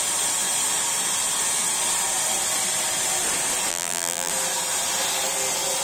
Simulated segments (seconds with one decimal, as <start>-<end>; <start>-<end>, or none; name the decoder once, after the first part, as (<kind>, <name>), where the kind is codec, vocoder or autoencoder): 3.7-4.3 (vocoder, BigVGAN v2)